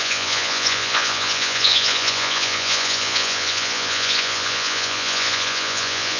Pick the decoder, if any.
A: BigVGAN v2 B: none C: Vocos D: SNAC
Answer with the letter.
C